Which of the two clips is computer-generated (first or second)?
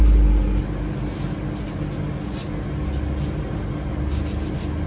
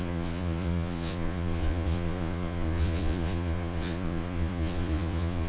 second